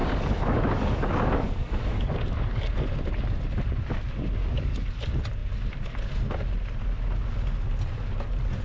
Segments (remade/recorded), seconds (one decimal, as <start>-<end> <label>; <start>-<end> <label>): 0.0-2.7 remade; 2.7-4.4 recorded; 4.4-4.9 remade; 4.9-8.6 recorded